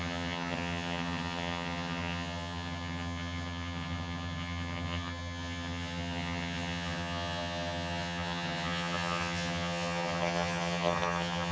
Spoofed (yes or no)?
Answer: yes